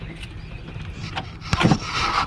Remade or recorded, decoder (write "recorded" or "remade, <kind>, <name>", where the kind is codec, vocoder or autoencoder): recorded